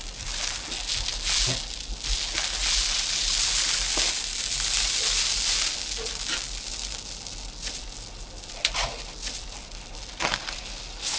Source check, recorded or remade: recorded